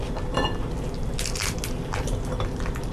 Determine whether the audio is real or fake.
real